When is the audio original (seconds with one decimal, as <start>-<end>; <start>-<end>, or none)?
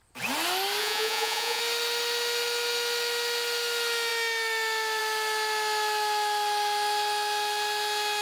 0.0-0.8; 1.6-8.2